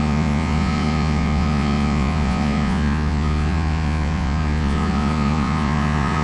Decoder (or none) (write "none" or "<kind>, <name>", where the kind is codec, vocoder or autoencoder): vocoder, Vocos